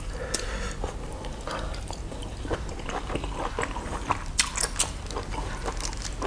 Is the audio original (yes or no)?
yes